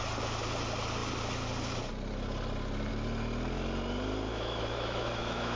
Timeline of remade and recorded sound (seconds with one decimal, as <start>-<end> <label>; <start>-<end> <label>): 0.0-4.3 recorded; 4.3-5.6 remade